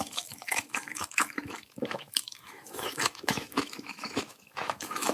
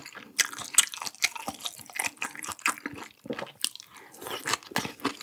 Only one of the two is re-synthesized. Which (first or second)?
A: first